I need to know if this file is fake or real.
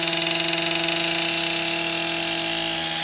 real